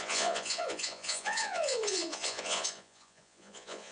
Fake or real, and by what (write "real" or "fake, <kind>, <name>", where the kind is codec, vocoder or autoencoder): fake, vocoder, Vocos